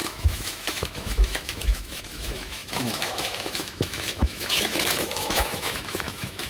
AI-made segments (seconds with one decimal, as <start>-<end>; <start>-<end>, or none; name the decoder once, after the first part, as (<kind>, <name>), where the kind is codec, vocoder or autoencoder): 0.0-6.5 (autoencoder, DAC-VAE)